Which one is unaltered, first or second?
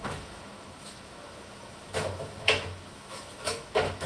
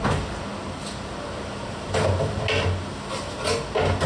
second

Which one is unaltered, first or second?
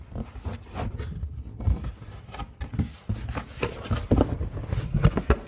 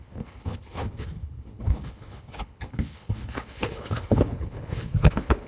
first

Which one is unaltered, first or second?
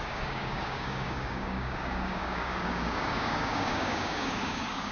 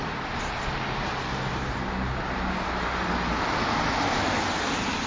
second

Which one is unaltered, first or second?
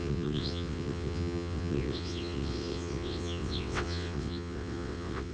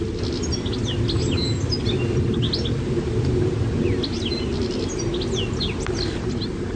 second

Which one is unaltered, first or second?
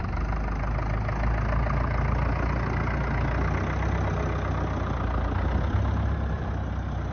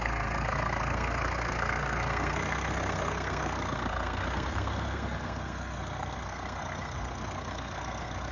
first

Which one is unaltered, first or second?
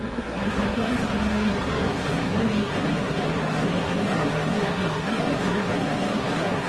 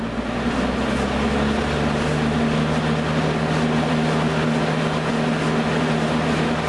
second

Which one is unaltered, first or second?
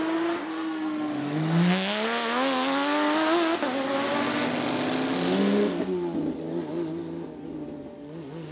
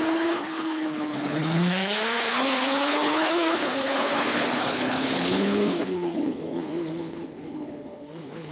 first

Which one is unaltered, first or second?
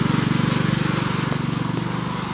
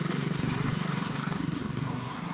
first